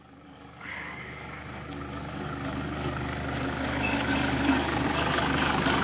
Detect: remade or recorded remade